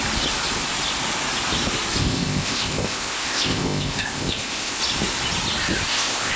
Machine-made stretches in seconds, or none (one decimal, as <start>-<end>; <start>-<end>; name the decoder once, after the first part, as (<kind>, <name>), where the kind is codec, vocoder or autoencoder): 2.0-4.8 (codec, ZipCodec); 5.9-6.4